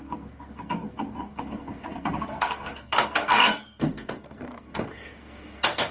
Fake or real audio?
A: fake